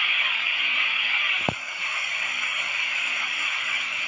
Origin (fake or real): fake